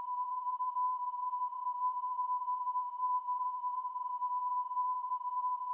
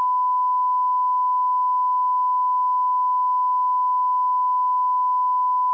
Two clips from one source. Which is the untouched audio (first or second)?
second